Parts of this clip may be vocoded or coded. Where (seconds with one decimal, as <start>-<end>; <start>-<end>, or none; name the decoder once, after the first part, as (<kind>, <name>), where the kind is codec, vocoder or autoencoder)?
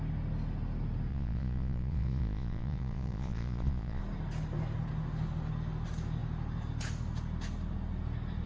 1.1-4.0 (vocoder, Vocos)